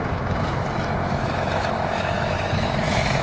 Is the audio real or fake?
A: fake